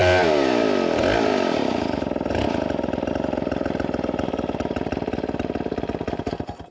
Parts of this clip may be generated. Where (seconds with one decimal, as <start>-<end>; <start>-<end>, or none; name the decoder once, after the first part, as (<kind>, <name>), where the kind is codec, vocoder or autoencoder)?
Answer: none